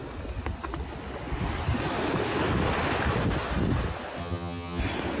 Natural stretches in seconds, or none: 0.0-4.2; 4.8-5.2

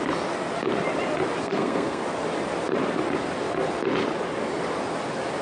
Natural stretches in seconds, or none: 0.0-1.4; 2.0-5.4

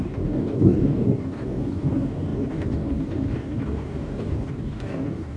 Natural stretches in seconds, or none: none

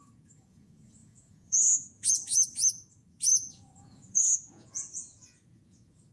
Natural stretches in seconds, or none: none

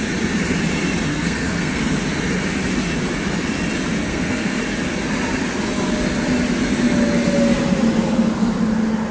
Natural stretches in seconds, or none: 0.0-1.1; 1.8-4.1; 4.6-9.1

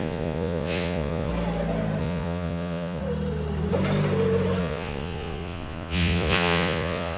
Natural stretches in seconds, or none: 1.3-2.0; 3.0-4.6